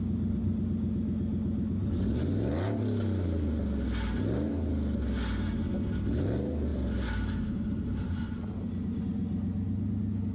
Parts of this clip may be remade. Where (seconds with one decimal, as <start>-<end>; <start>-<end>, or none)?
6.7-9.0